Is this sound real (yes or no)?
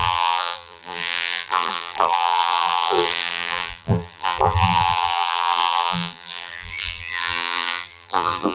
no